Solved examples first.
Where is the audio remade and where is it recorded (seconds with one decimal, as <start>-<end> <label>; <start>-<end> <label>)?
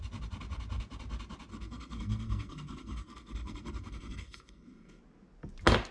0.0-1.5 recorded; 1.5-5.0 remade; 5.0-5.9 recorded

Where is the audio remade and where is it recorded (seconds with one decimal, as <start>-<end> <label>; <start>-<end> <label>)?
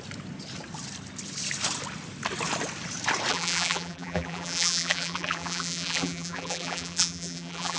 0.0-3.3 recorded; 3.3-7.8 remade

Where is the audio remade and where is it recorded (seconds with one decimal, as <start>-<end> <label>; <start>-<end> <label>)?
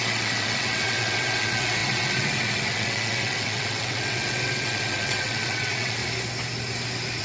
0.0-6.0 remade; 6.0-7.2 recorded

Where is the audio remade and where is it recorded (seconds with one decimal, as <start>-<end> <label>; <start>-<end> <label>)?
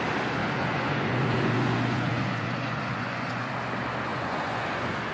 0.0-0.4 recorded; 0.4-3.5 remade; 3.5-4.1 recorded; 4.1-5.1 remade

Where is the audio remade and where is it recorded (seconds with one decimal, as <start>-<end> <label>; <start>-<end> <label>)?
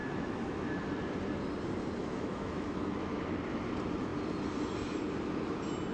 0.0-0.8 remade; 0.8-2.0 recorded; 2.0-3.2 remade; 3.2-5.9 recorded